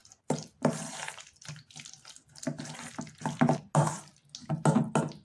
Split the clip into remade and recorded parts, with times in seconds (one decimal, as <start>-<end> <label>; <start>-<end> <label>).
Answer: 0.0-5.2 recorded